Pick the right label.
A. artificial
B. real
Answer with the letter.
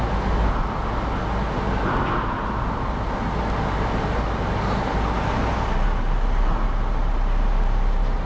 B